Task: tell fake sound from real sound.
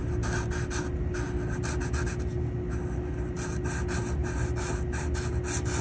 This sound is real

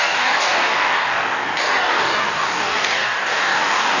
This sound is fake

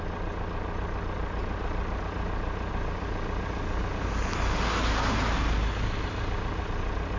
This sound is real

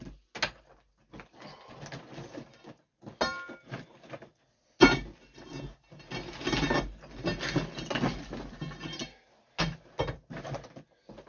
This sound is real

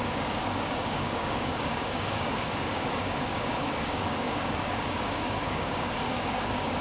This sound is fake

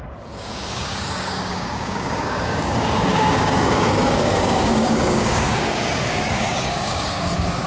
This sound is fake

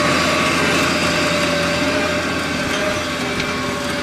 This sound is real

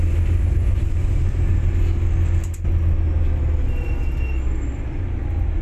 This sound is real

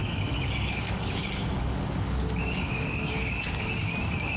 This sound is fake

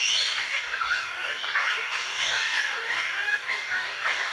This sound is fake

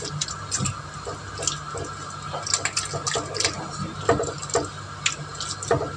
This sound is real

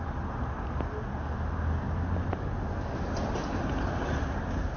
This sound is real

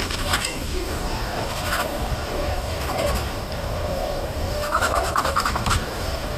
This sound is fake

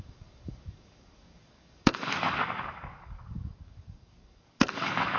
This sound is fake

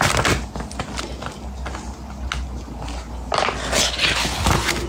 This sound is real